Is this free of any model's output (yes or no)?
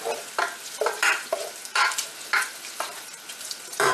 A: no